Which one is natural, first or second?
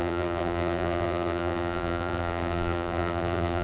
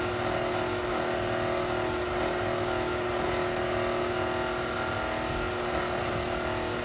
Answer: second